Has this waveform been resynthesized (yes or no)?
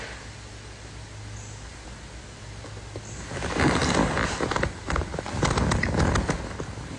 no